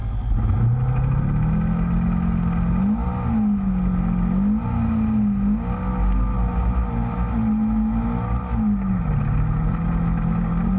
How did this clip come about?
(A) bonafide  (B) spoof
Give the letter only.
A